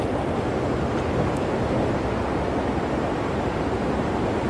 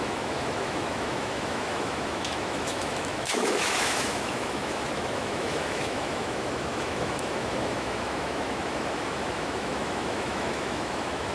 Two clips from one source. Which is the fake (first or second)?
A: second